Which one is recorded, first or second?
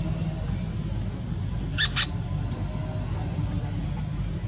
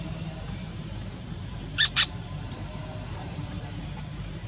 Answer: first